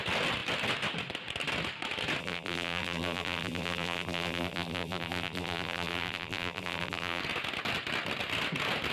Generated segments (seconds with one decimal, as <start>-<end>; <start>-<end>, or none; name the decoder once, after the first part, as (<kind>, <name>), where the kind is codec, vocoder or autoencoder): 2.2-7.2 (vocoder, BigVGAN v2)